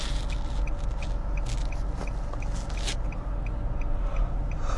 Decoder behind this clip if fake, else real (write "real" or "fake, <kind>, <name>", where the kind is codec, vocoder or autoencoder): real